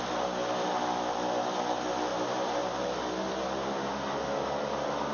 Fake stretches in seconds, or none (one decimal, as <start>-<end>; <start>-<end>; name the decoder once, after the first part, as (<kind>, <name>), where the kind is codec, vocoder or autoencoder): 2.1-3.3 (vocoder, BigVGAN v2)